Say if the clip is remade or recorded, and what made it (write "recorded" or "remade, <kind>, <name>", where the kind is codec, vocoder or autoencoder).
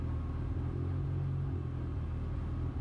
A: recorded